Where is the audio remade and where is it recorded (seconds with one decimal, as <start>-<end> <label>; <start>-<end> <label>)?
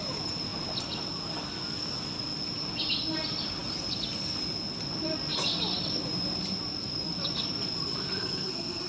0.0-8.1 recorded; 8.1-8.9 remade